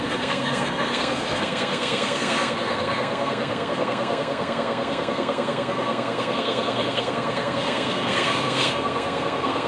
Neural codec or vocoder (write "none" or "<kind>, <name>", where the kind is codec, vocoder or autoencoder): codec, SNAC